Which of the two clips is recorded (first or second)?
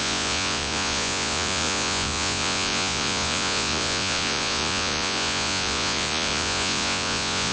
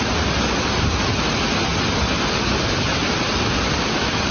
second